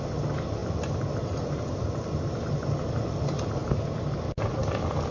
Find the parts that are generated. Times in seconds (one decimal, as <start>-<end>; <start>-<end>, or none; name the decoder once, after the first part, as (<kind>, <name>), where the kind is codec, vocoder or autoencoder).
none